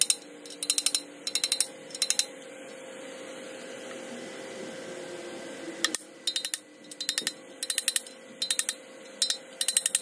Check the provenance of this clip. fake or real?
real